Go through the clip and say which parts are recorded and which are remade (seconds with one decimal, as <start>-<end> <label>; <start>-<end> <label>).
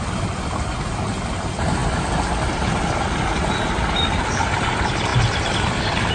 0.0-6.1 recorded